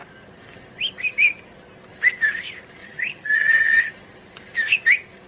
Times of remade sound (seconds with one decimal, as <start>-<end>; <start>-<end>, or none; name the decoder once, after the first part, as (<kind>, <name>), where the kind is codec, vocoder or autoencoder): 2.8-3.9 (vocoder, HiFi-GAN)